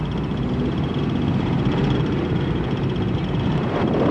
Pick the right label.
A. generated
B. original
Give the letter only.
A